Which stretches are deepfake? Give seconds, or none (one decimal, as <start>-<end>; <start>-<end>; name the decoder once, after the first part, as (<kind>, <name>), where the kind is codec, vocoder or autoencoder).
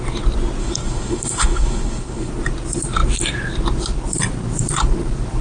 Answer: 0.6-2.3 (codec, HILCodec)